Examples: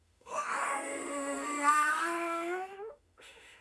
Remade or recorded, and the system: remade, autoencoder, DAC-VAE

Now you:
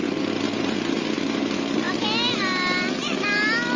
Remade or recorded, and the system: recorded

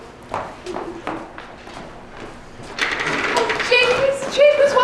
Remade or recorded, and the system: recorded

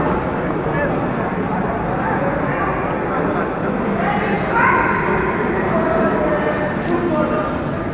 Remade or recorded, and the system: recorded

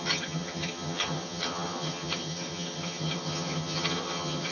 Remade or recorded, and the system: remade, vocoder, HiFi-GAN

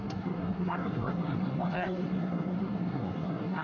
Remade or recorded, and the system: remade, codec, SNAC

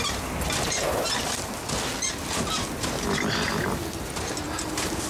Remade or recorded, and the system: recorded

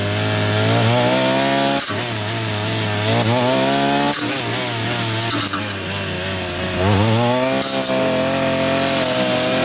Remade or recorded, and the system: recorded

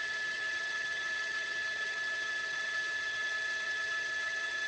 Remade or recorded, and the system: remade, vocoder, HiFi-GAN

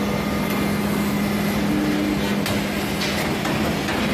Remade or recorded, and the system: recorded